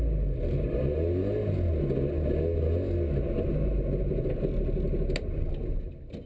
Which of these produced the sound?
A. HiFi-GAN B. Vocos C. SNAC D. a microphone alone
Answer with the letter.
D